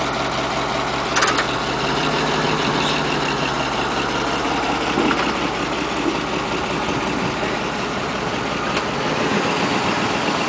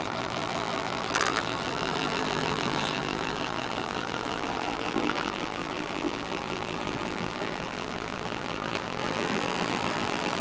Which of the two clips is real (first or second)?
first